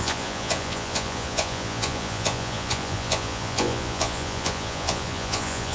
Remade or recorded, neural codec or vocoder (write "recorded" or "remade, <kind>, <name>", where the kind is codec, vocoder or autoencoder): remade, vocoder, Vocos